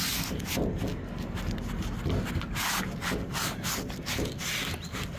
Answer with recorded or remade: recorded